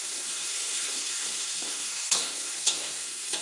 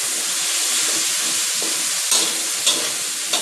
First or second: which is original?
second